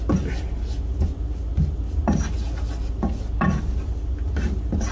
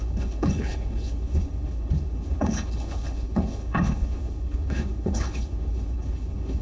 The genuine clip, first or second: first